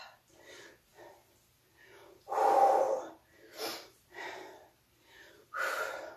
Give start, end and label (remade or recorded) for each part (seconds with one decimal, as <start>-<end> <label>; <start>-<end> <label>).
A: 0.0-6.2 recorded